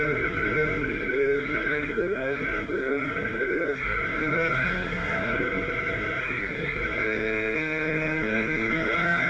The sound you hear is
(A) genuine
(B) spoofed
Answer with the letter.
B